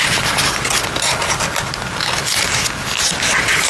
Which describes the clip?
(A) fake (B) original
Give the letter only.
B